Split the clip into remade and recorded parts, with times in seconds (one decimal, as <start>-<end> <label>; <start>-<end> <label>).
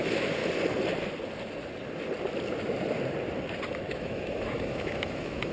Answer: 0.0-0.4 remade; 0.4-3.7 recorded; 3.7-5.5 remade